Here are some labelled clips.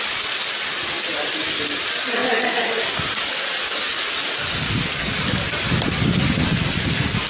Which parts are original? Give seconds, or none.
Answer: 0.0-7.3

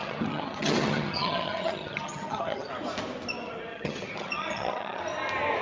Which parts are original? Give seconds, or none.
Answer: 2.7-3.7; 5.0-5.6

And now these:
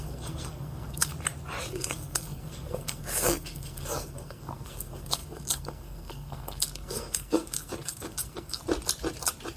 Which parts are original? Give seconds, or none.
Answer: 1.1-1.7; 8.6-9.6

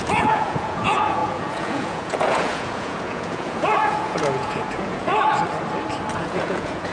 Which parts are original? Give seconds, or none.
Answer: 5.1-6.1